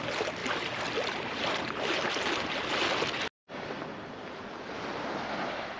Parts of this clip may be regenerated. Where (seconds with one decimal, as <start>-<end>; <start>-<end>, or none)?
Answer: none